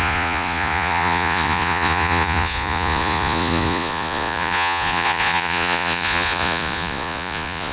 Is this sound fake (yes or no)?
yes